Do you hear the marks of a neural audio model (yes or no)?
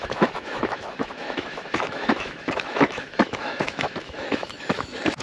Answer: yes